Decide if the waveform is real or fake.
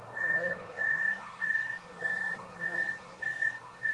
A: fake